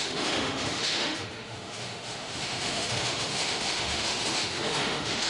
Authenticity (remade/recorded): remade